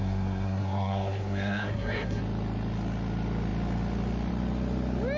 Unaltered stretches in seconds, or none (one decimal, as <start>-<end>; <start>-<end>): 2.2-5.2